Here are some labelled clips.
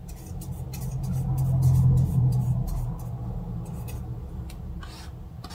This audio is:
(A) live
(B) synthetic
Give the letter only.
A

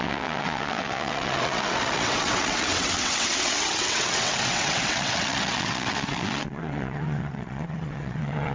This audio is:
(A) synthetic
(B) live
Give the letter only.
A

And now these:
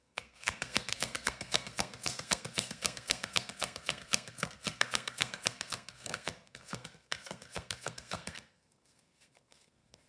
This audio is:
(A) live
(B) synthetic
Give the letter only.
B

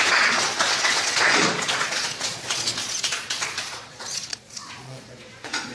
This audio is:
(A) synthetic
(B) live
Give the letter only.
A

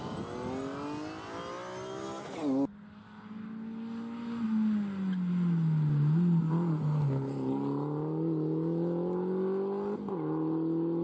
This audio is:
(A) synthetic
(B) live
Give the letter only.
B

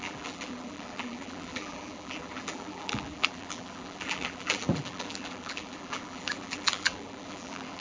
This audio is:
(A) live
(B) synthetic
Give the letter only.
B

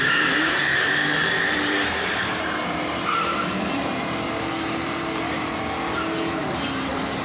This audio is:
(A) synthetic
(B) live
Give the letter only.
A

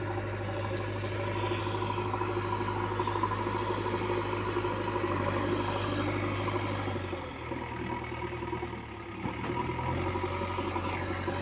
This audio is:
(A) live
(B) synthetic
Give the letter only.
A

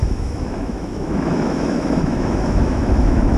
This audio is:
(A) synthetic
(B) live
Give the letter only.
A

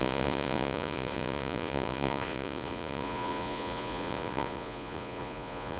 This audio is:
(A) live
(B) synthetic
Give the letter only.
B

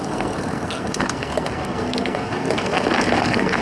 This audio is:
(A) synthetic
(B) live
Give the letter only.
A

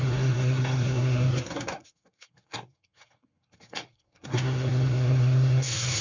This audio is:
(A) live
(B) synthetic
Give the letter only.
B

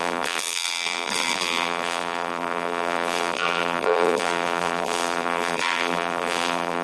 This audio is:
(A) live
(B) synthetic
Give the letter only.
B